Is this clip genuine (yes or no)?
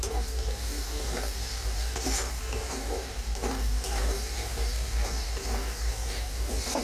no